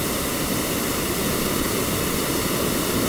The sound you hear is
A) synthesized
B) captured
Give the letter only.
B